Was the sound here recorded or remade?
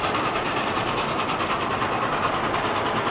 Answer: recorded